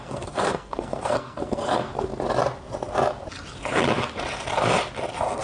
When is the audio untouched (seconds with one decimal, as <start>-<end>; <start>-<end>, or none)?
2.1-5.4